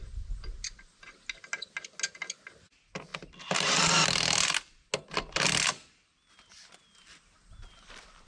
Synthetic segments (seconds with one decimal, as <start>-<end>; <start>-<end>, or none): none